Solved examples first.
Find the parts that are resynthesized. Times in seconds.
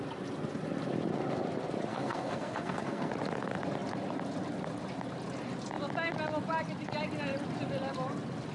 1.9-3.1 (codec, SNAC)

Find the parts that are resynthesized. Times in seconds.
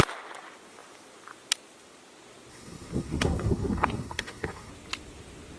2.5-4.7 (codec, SNAC)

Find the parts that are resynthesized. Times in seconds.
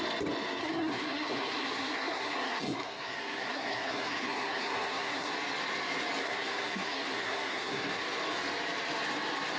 0.6-5.3 (codec, SNAC); 6.2-8.0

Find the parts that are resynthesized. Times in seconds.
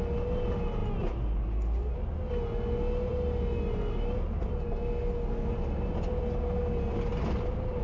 none